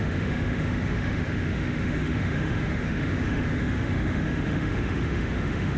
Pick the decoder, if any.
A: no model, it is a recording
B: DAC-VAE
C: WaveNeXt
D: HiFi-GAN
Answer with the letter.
B